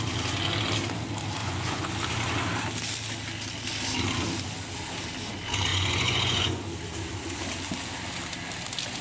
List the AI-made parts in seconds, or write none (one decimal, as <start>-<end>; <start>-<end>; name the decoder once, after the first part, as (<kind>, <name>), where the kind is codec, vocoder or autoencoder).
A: 1.4-1.9 (vocoder, Vocos); 5.7-6.6